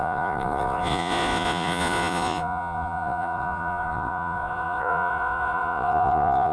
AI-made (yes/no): yes